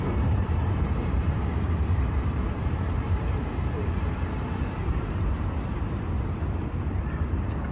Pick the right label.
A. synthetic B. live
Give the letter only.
A